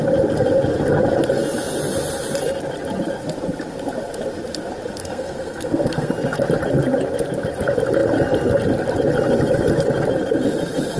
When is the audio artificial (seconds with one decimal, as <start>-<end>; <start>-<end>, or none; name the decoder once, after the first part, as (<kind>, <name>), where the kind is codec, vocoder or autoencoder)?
5.0-6.1 (codec, SNAC)